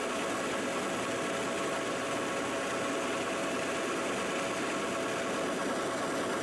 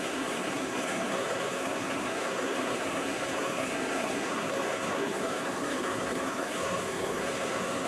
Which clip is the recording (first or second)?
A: first